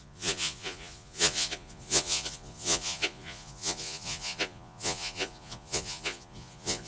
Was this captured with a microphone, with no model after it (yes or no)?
no